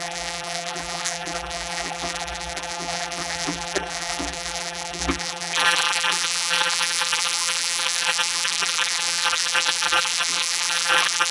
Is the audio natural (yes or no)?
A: no